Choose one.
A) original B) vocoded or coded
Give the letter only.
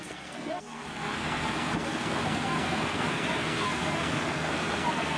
B